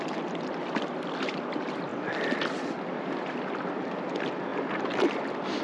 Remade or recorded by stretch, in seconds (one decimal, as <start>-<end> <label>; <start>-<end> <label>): 0.0-4.5 remade; 4.5-5.6 recorded